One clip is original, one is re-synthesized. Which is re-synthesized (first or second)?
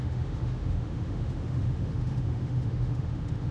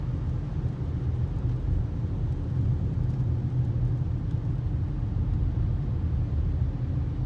first